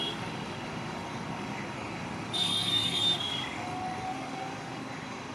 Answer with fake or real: fake